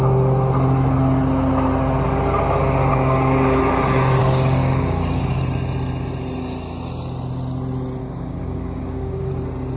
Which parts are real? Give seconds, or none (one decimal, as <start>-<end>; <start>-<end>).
0.0-2.9; 3.6-4.2; 5.4-8.0; 9.3-9.8